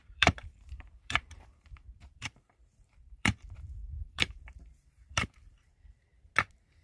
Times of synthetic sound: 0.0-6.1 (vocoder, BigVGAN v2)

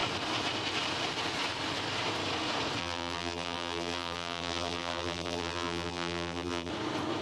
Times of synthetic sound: 2.8-6.7 (vocoder, BigVGAN v2)

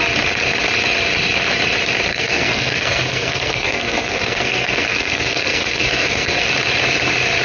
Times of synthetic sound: 2.1-6.5 (codec, SNAC)

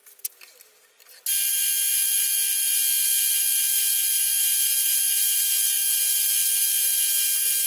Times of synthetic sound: none

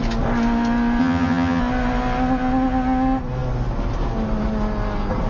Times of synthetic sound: 1.0-1.6 (vocoder, HiFi-GAN)

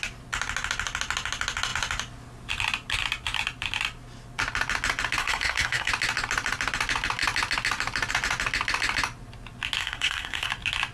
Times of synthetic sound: 5.2-5.9 (codec, SNAC); 9.8-10.5